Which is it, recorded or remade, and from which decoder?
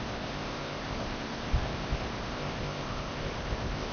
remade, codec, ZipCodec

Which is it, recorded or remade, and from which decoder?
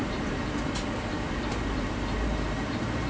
remade, vocoder, BigVGAN v2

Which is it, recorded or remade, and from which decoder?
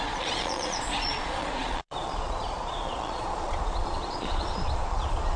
remade, vocoder, Vocos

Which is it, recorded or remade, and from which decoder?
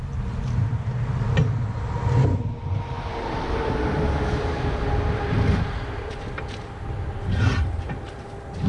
recorded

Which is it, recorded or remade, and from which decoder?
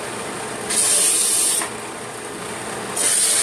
recorded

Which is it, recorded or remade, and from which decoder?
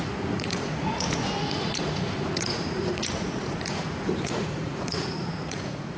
remade, vocoder, Vocos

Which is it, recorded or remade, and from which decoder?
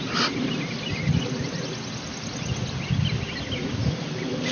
recorded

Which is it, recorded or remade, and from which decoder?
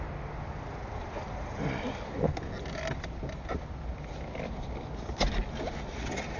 recorded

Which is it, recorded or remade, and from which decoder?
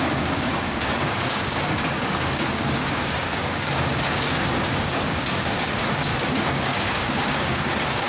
remade, codec, DAC